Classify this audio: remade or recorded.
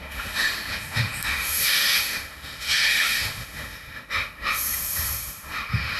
remade